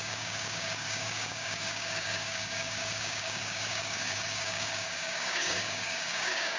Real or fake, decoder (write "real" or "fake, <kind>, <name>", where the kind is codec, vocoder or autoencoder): fake, codec, DAC